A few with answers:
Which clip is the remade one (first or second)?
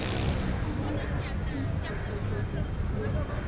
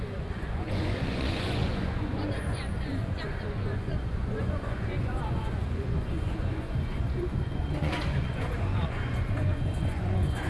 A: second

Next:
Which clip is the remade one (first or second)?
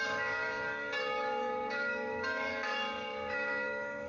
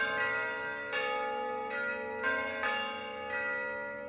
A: first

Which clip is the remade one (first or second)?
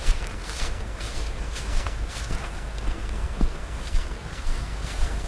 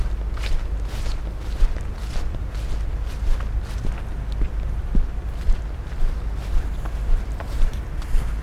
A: first